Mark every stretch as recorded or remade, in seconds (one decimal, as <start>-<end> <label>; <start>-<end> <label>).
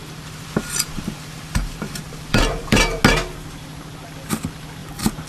0.0-3.0 remade; 3.0-4.8 recorded; 4.8-5.3 remade